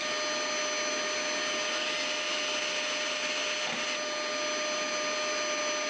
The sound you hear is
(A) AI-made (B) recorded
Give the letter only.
B